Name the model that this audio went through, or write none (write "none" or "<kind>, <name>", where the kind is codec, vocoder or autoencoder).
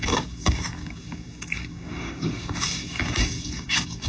codec, DAC